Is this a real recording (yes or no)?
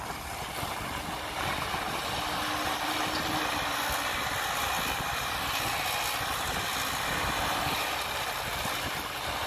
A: yes